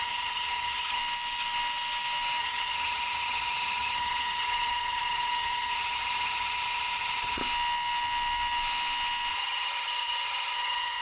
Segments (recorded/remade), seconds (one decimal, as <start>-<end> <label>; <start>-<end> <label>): 0.0-1.0 remade; 1.0-2.4 recorded; 2.4-7.4 remade; 7.4-9.3 recorded; 9.3-11.0 remade